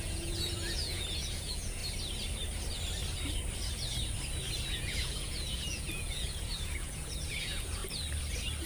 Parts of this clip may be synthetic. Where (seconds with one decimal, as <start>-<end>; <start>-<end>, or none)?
0.0-1.8; 4.7-7.8